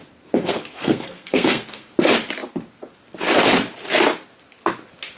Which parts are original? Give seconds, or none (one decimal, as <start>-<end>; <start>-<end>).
0.0-0.4; 1.9-5.2